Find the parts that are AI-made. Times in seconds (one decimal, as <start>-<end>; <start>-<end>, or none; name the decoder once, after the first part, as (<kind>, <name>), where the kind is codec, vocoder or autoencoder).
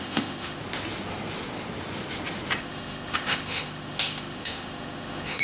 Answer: 0.0-0.6 (autoencoder, DAC-VAE); 2.6-5.4